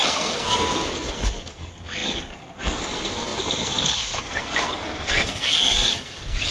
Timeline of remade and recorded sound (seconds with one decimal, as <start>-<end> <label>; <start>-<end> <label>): 0.0-6.5 remade

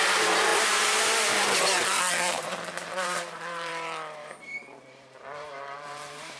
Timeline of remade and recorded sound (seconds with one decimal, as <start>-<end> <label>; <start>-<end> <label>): 0.0-6.4 remade

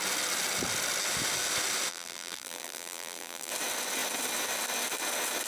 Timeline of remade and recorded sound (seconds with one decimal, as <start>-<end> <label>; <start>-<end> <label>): 0.0-1.9 recorded; 1.9-3.5 remade; 3.5-5.5 recorded

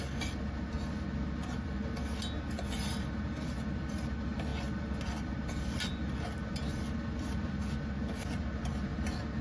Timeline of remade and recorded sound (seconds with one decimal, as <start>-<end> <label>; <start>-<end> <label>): 0.0-9.4 recorded